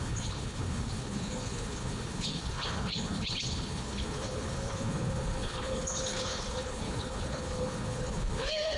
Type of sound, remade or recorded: remade